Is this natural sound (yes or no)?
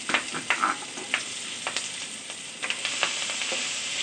yes